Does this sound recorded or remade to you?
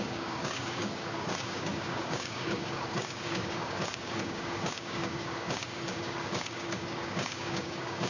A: remade